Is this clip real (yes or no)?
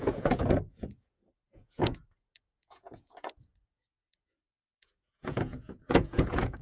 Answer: no